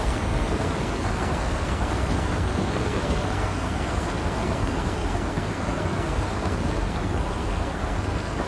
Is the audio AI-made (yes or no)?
yes